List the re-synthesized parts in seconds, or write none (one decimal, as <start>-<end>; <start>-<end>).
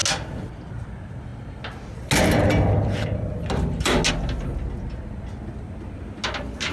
none